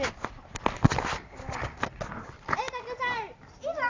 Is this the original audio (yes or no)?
yes